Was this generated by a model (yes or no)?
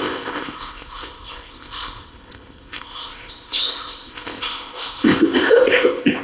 yes